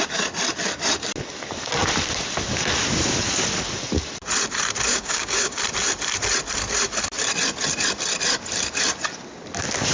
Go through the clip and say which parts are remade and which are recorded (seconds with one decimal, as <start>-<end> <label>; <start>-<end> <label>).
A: 0.0-4.9 recorded; 4.9-5.6 remade; 5.6-9.9 recorded